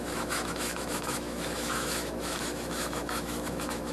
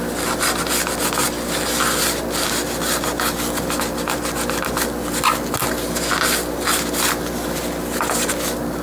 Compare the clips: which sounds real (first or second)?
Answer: second